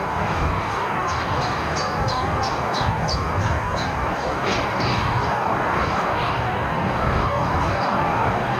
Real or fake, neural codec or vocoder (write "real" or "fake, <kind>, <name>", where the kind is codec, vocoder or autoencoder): fake, codec, DAC